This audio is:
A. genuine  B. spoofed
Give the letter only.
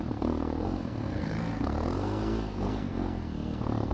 B